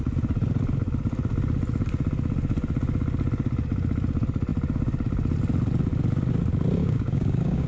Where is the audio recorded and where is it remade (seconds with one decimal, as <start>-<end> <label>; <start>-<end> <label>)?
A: 0.0-6.8 recorded; 6.8-7.7 remade